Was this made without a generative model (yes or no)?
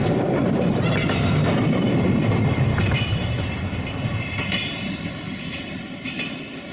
no